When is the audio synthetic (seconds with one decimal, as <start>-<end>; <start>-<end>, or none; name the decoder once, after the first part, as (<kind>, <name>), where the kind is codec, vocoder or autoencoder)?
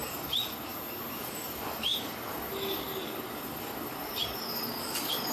0.0-0.7 (codec, DAC); 1.2-5.3